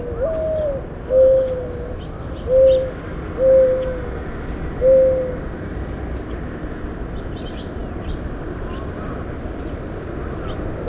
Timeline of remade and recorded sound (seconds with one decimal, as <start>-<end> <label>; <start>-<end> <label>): 0.0-10.9 recorded